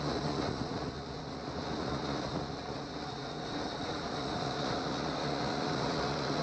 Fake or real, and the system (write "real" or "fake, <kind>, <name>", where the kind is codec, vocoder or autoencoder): fake, vocoder, Vocos